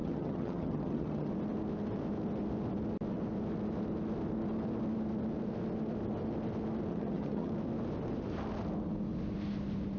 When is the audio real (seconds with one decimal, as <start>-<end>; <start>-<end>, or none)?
1.3-6.9; 7.5-10.0